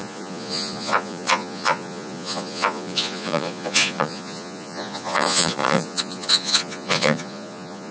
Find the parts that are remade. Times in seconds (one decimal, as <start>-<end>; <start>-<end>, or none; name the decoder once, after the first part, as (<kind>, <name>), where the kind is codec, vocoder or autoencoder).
0.0-7.9 (vocoder, Vocos)